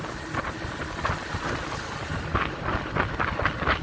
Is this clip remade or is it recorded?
recorded